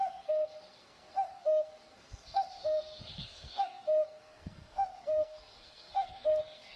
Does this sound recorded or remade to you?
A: remade